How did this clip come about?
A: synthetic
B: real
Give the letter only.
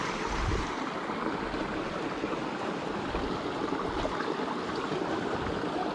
B